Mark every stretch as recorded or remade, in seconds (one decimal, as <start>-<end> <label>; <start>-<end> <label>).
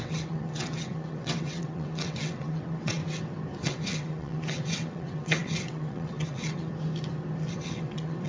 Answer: 0.0-3.0 remade; 3.0-3.6 recorded; 3.6-6.7 remade; 6.7-7.5 recorded; 7.5-8.3 remade